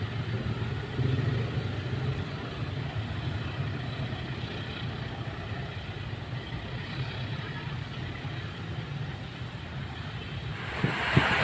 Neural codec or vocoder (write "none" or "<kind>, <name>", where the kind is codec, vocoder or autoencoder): none